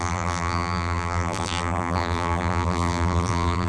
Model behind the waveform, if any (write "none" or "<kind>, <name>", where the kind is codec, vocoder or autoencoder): vocoder, BigVGAN v2